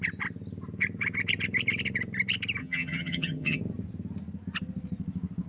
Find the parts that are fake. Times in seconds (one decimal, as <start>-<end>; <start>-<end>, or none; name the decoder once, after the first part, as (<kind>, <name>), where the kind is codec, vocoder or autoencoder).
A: 2.6-3.6 (vocoder, HiFi-GAN)